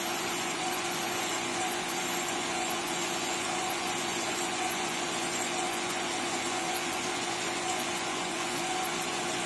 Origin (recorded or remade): remade